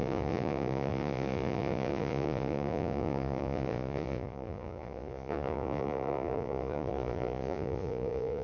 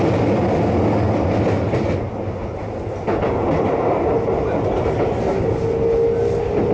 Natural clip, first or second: second